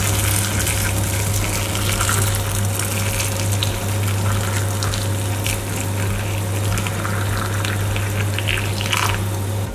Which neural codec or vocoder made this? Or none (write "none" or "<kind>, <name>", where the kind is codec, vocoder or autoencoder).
none